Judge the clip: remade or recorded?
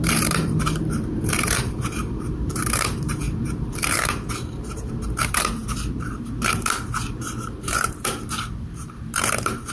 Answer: remade